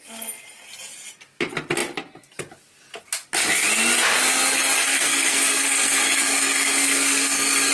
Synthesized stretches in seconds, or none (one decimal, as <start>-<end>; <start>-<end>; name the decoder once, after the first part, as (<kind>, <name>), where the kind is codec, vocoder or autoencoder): 4.8-7.7 (codec, SNAC)